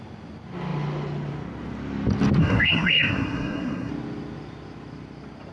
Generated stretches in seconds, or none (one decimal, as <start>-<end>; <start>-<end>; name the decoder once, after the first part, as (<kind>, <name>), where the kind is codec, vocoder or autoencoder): 2.4-3.9 (codec, SNAC)